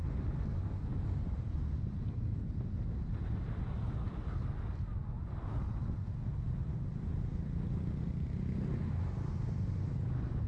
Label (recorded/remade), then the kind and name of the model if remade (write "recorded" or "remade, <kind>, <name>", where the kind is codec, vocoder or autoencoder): recorded